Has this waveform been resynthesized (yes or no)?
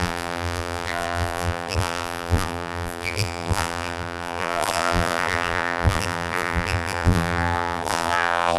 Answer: yes